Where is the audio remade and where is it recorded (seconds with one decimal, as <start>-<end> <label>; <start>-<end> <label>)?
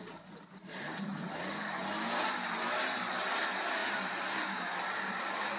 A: 0.0-3.8 recorded; 3.8-4.7 remade; 4.7-5.6 recorded